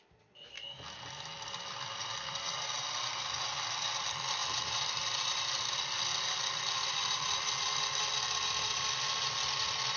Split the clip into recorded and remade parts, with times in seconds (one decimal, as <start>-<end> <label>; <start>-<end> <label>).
0.0-6.1 recorded; 6.1-9.2 remade; 9.2-10.0 recorded